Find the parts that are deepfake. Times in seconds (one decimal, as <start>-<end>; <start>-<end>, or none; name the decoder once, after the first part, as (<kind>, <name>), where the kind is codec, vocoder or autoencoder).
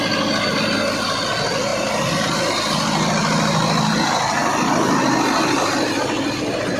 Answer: 1.7-2.5 (vocoder, BigVGAN v2)